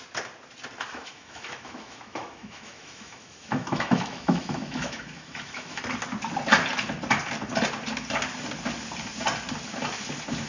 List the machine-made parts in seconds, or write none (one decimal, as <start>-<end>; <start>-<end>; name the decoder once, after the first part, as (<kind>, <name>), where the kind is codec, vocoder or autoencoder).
0.9-5.8 (autoencoder, DAC-VAE)